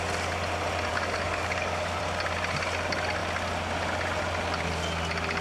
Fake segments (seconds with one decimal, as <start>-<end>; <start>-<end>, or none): 0.9-2.0